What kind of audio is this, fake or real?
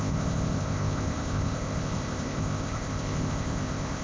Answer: fake